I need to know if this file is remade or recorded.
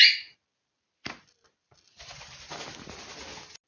recorded